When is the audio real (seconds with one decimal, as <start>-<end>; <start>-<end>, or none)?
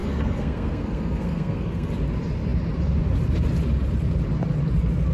1.9-5.1